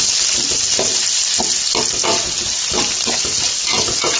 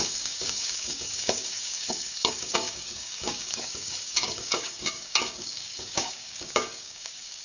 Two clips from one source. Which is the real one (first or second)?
first